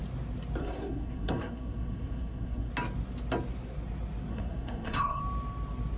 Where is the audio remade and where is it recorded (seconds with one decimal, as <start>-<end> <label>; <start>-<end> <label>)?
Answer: 0.0-0.6 recorded; 0.6-2.7 remade; 2.7-4.3 recorded; 4.3-5.2 remade; 5.2-6.0 recorded